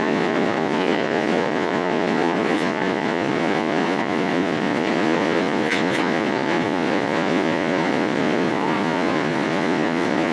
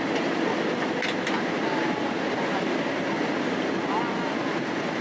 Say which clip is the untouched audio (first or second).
second